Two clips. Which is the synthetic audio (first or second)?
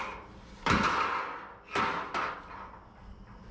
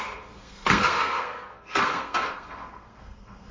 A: second